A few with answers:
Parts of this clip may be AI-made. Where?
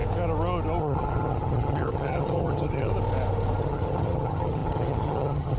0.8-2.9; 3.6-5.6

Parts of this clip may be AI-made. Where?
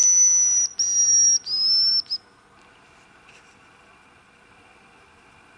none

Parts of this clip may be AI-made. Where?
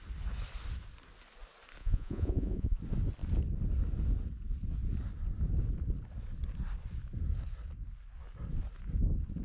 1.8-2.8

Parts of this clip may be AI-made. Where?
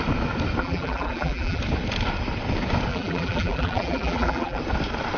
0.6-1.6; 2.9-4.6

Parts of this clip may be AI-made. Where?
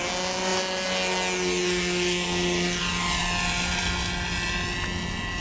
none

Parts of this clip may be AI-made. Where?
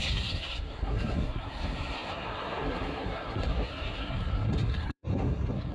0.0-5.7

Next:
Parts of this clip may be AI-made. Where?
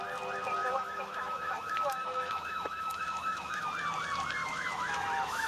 0.6-3.7; 4.4-5.5